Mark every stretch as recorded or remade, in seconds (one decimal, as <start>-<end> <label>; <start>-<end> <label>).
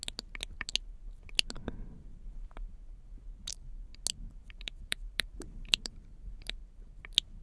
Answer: 0.0-3.5 recorded; 3.5-3.9 remade; 3.9-4.4 recorded; 4.4-6.6 remade; 6.6-7.4 recorded